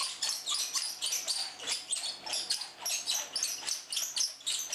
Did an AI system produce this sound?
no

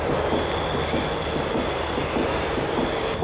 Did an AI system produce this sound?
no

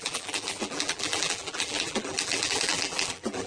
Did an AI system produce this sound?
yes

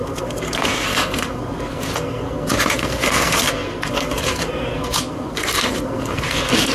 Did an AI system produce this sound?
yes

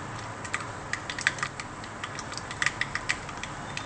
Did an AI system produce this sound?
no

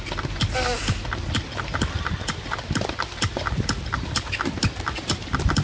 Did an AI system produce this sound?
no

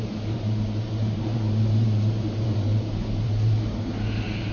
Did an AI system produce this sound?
yes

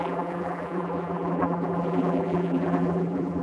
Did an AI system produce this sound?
yes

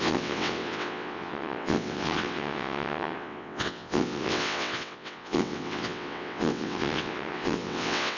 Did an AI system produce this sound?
yes